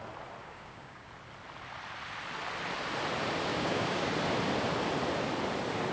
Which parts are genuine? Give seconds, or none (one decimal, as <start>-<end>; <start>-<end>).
0.0-0.4; 1.1-3.5; 4.1-5.9